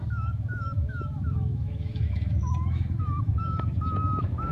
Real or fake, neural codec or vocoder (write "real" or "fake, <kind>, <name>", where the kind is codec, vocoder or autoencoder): fake, autoencoder, DAC-VAE